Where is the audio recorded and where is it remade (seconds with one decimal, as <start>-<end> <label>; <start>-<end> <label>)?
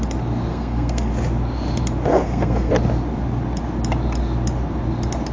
0.0-0.5 recorded; 0.5-1.1 remade; 1.1-2.1 recorded; 2.1-2.7 remade; 2.7-5.3 recorded